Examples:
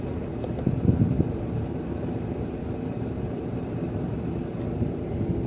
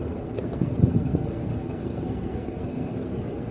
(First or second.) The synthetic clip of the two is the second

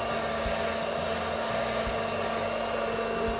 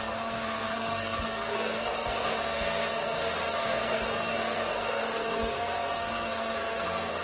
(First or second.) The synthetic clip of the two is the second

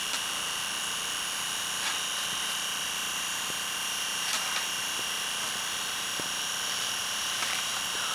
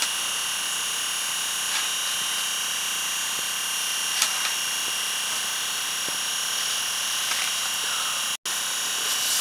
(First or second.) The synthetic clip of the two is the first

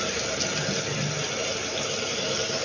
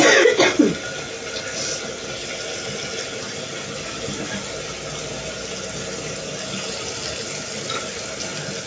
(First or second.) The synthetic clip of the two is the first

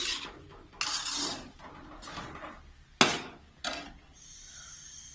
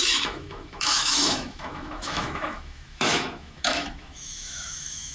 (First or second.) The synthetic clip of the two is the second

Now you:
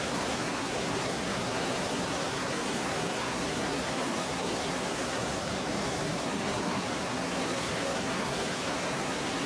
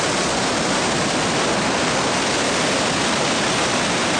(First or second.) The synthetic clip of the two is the first